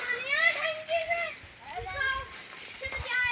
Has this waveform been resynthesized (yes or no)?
no